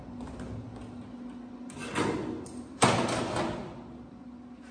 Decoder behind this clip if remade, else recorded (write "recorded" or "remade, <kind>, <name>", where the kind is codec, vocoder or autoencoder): recorded